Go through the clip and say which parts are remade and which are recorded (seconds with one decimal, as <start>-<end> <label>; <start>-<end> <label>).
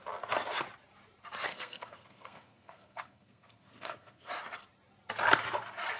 0.0-1.5 recorded; 1.5-4.3 remade; 4.3-6.0 recorded